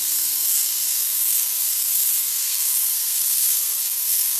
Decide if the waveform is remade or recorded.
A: remade